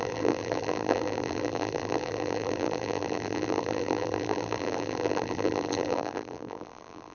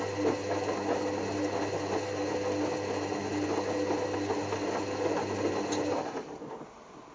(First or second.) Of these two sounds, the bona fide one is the second